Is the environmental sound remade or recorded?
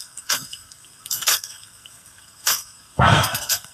remade